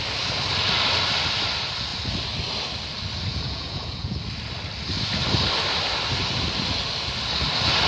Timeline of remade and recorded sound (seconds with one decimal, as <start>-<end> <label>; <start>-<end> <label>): 0.0-3.3 recorded; 3.3-4.2 remade; 4.2-7.9 recorded